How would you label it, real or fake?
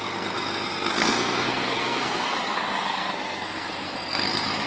fake